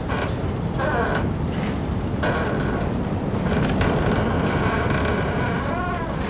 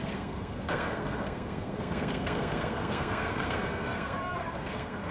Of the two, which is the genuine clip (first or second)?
first